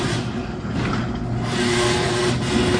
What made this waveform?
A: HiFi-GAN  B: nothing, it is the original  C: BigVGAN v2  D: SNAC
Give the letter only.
B